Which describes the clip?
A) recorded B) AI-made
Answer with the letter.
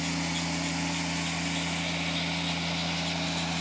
A